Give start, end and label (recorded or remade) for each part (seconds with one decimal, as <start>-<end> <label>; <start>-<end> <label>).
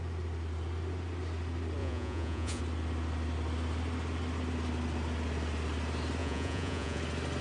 0.0-1.8 recorded; 1.8-2.6 remade; 2.6-6.2 recorded; 6.2-7.0 remade; 7.0-7.4 recorded